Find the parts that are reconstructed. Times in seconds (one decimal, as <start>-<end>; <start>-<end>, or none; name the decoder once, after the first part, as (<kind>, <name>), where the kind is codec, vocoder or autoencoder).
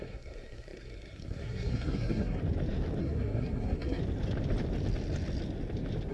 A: 0.0-2.4 (codec, SNAC); 3.0-4.0